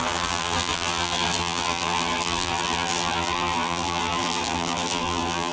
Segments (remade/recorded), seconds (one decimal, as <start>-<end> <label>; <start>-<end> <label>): 0.0-5.5 remade